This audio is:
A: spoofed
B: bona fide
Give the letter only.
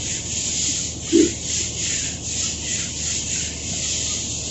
B